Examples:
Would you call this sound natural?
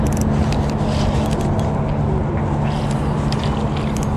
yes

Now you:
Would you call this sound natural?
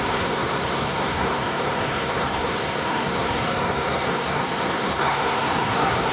no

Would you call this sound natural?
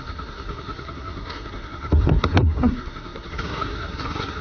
no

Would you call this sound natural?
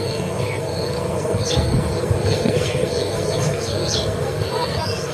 no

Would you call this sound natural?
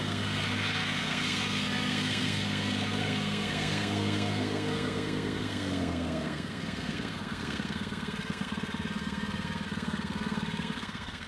no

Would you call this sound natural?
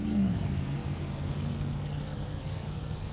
no